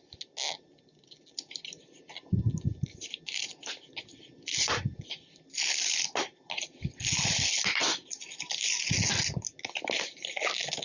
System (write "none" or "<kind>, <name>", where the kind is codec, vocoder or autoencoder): none